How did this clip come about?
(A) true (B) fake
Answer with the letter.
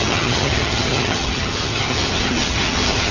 B